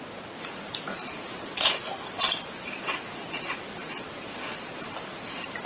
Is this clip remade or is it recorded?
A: remade